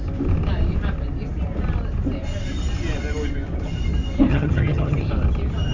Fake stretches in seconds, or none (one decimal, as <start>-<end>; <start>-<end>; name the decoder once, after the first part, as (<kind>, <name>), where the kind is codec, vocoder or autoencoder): 4.3-5.1 (vocoder, HiFi-GAN)